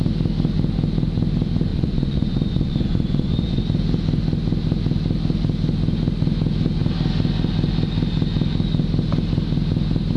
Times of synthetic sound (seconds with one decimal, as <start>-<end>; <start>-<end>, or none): 1.7-3.6